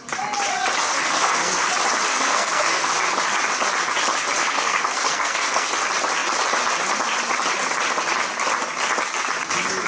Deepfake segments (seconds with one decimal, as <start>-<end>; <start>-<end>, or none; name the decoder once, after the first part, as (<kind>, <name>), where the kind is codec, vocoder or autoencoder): 0.9-1.7 (codec, SNAC); 2.1-2.9; 4.4-5.7